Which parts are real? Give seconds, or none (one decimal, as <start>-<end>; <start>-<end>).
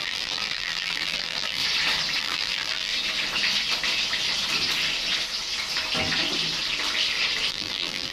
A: 1.6-2.2; 2.9-7.5